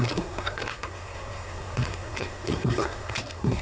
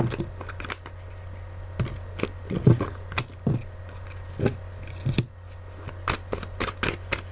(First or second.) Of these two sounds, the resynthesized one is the first